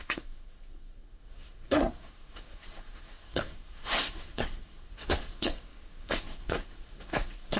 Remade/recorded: remade